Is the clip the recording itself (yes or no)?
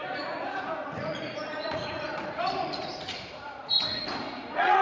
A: no